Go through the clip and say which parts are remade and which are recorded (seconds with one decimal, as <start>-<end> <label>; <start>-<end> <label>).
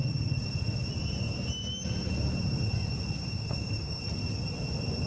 0.0-3.2 recorded; 3.2-4.0 remade; 4.0-5.1 recorded